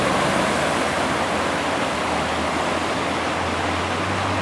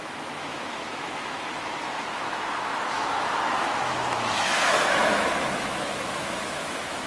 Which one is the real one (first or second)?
first